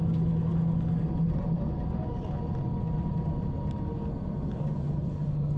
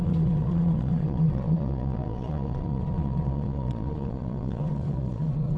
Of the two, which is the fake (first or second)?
second